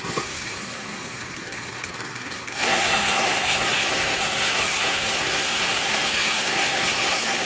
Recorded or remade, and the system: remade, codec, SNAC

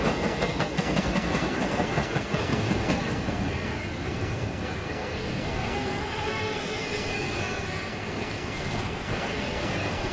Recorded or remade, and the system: remade, codec, SNAC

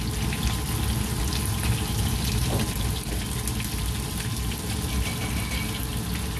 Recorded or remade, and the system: recorded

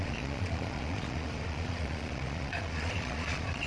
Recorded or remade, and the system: remade, vocoder, Vocos